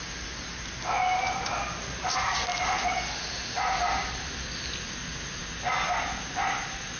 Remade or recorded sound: recorded